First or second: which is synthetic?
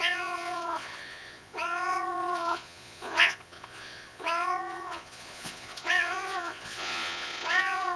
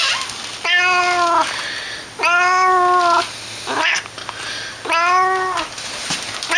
first